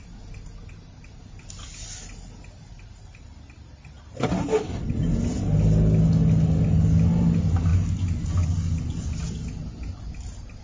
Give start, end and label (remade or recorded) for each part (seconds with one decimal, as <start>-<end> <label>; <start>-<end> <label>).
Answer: 0.0-3.1 recorded; 3.1-5.0 remade; 5.0-10.6 recorded